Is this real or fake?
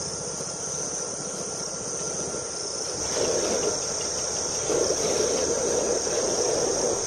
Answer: real